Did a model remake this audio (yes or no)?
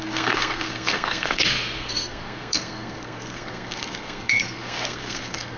yes